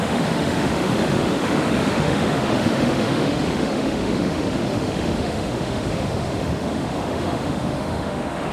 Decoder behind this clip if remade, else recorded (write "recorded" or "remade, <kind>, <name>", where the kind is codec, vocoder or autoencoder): remade, autoencoder, DAC-VAE